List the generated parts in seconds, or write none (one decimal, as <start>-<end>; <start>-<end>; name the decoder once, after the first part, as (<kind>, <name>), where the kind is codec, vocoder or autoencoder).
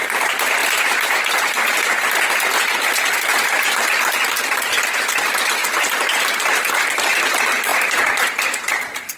0.6-1.1 (vocoder, BigVGAN v2)